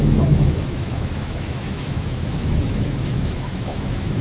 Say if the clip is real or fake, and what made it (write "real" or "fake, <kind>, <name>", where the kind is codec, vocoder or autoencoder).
fake, autoencoder, DAC-VAE